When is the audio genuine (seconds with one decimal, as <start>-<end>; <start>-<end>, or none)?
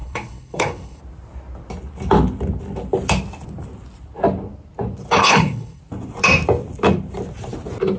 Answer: 1.0-5.2; 5.8-8.0